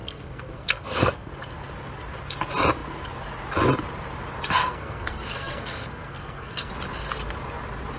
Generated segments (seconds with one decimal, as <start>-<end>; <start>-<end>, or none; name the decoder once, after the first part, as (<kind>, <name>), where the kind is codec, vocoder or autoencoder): 0.0-1.3 (codec, SNAC); 4.6-6.7